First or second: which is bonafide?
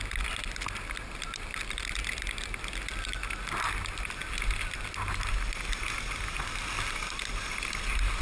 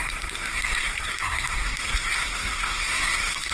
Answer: first